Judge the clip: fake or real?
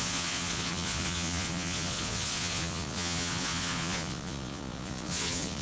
fake